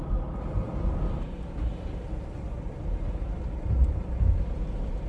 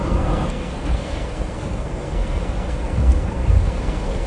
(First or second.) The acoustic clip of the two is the first